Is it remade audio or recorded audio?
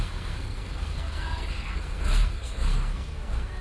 remade